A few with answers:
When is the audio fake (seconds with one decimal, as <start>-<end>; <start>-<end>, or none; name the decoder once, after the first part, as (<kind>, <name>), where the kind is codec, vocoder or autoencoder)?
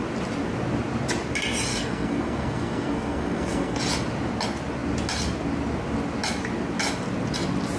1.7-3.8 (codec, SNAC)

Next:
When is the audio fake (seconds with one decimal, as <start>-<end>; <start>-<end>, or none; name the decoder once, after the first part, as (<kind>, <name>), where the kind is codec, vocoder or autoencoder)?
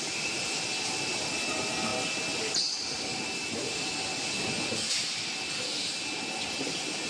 none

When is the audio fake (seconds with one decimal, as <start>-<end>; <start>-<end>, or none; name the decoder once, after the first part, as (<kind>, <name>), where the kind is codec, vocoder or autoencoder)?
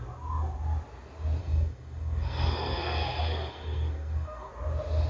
1.4-4.5 (codec, SNAC)